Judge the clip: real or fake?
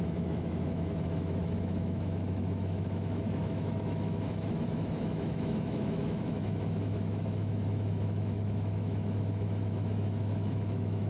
fake